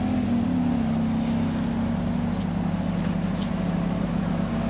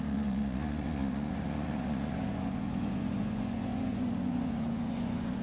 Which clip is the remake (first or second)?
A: second